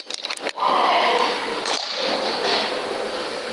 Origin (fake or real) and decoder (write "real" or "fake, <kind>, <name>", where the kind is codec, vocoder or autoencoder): fake, vocoder, BigVGAN v2